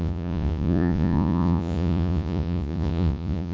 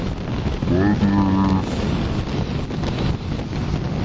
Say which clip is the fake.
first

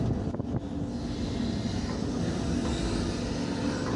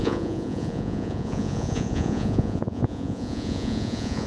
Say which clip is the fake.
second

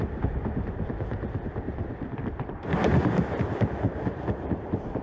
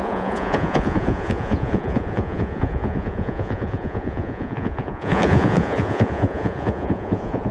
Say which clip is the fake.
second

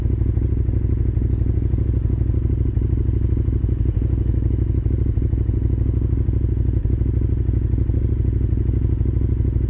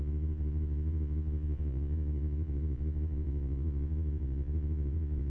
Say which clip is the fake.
second